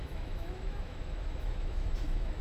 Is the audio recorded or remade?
remade